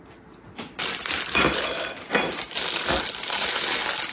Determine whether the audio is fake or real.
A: real